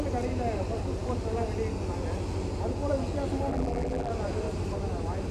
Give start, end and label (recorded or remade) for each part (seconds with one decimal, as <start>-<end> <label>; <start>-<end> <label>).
0.0-3.5 recorded; 3.5-4.1 remade; 4.1-5.3 recorded